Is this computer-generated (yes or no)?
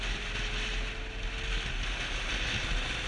no